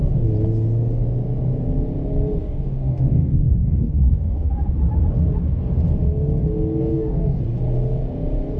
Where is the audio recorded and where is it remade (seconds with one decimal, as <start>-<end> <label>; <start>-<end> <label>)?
0.0-2.4 recorded; 2.4-4.5 remade; 4.5-6.8 recorded; 6.8-7.4 remade; 7.4-8.6 recorded